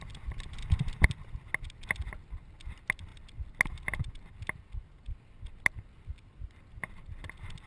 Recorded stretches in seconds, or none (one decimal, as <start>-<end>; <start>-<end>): 0.0-7.7

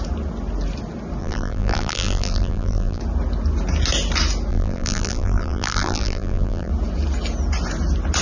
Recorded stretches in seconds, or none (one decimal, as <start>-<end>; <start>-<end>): 0.0-1.2; 3.0-4.5; 6.7-8.2

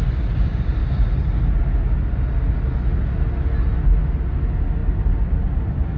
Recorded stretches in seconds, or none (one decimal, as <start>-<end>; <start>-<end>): 0.0-6.0